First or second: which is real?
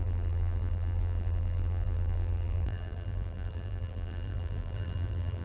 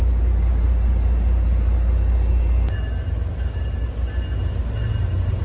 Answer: second